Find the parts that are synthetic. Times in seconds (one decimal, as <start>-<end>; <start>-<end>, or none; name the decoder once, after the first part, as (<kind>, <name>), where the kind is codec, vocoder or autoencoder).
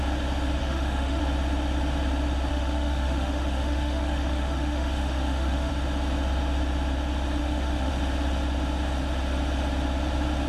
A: 0.6-1.2 (autoencoder, DAC-VAE); 2.5-5.7; 7.4-7.9